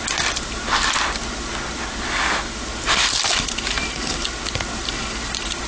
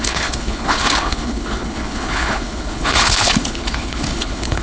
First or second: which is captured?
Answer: first